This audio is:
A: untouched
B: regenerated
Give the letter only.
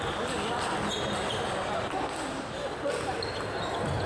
A